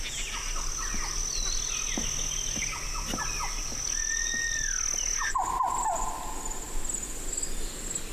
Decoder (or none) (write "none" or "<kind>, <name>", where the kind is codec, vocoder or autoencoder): none